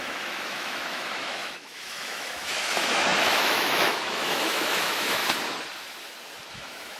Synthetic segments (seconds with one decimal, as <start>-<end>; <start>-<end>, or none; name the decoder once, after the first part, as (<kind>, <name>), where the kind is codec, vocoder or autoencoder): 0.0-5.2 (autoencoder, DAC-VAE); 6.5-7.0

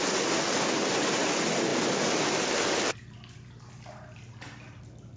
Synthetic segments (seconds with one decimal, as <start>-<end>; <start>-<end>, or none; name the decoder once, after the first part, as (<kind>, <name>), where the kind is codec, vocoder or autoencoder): none

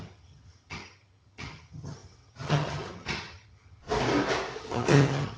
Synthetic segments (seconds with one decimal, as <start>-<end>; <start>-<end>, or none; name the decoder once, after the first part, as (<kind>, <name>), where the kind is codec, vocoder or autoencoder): 0.0-3.8 (vocoder, HiFi-GAN); 4.6-5.4

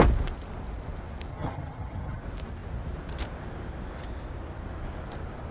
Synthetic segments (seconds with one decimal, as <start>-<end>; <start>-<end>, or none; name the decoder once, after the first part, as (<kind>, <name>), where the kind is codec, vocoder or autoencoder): 1.3-2.2 (vocoder, HiFi-GAN)